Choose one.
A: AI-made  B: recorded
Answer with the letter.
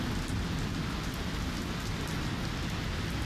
B